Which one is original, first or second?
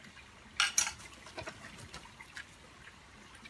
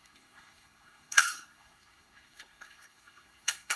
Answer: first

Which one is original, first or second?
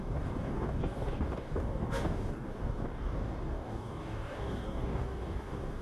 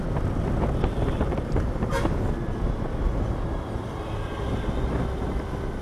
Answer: second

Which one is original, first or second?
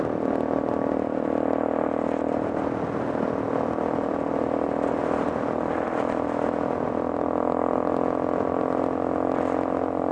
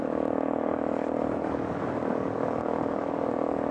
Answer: first